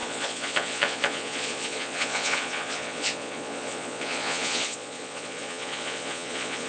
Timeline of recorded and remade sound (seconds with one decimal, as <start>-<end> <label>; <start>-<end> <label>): 0.0-6.7 remade